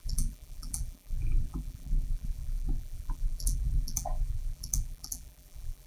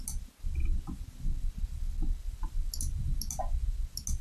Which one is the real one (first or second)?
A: second